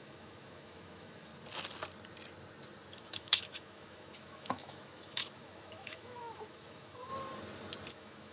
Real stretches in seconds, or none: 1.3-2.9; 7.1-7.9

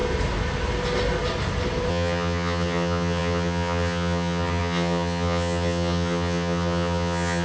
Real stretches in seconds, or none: 0.0-1.9